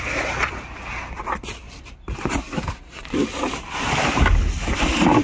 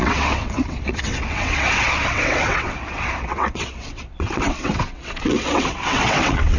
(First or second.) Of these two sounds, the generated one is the second